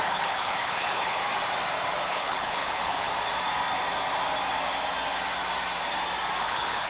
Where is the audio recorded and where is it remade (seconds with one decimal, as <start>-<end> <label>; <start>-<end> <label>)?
0.0-1.2 remade; 1.2-2.1 recorded; 2.1-3.1 remade; 3.1-6.4 recorded; 6.4-6.9 remade